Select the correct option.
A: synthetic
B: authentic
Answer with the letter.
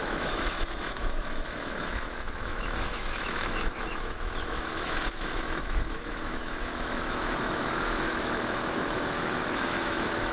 A